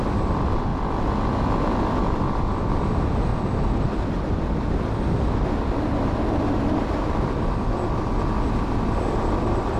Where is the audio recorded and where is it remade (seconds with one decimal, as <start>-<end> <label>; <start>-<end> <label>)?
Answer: 0.0-0.7 remade; 0.7-2.0 recorded; 2.0-3.3 remade; 3.3-8.5 recorded; 8.5-9.8 remade